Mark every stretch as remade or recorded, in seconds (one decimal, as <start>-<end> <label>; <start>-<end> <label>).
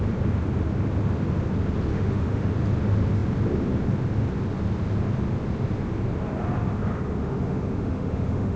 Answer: 0.0-1.9 recorded; 1.9-2.5 remade; 2.5-7.2 recorded; 7.2-8.6 remade